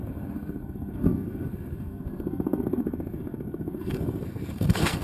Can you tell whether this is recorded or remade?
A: remade